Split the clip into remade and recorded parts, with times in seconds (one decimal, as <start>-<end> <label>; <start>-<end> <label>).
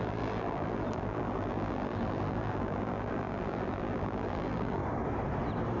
0.0-4.8 remade; 4.8-5.8 recorded